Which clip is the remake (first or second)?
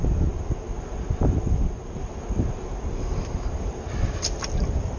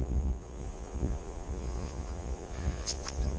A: second